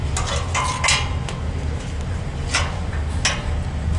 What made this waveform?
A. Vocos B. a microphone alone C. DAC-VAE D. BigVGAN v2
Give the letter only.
B